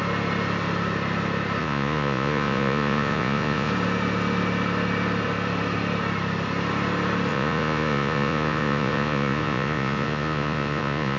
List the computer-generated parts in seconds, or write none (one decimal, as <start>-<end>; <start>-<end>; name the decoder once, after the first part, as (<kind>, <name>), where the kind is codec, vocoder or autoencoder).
1.6-3.7 (vocoder, Vocos); 7.3-11.2

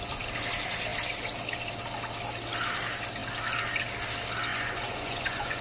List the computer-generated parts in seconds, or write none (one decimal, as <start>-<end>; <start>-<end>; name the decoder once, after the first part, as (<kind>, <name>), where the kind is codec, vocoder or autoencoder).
4.5-5.6 (vocoder, Vocos)

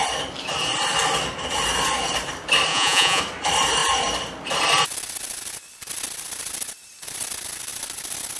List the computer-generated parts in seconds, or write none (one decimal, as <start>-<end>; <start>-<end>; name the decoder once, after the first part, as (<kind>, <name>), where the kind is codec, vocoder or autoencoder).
2.7-3.2 (vocoder, Vocos)

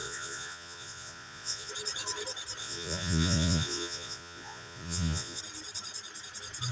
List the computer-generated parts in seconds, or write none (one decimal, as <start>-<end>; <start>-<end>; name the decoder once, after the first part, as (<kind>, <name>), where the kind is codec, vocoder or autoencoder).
0.0-1.7 (vocoder, Vocos); 2.6-5.4

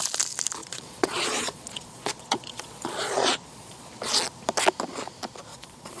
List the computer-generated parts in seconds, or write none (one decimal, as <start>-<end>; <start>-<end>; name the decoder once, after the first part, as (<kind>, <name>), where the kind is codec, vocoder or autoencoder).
0.6-3.9 (vocoder, Vocos); 5.5-6.0